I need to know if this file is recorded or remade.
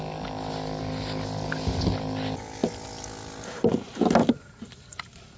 recorded